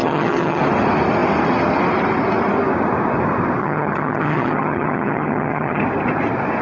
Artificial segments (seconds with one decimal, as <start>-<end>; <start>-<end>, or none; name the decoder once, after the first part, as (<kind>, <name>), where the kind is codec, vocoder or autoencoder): 0.0-0.6 (vocoder, HiFi-GAN); 3.6-5.8